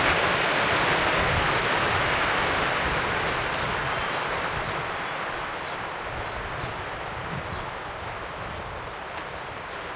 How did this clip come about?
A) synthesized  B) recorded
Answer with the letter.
B